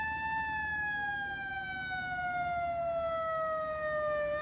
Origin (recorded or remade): recorded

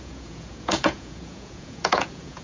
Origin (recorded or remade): remade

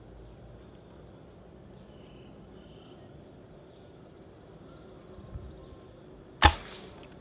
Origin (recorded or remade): recorded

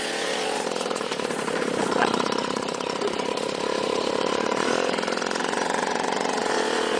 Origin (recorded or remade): remade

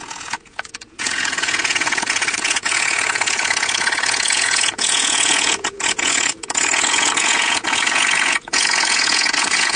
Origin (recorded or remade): remade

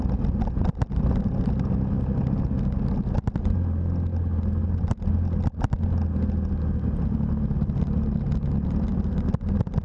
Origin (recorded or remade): recorded